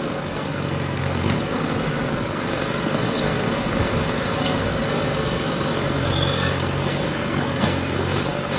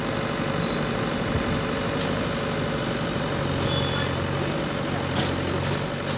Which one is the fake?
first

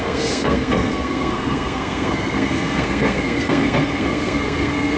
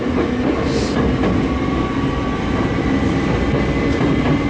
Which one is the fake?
first